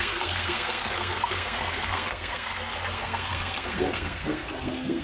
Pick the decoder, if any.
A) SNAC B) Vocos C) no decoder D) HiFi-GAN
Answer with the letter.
A